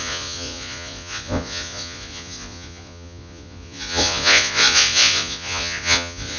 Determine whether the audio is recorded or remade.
remade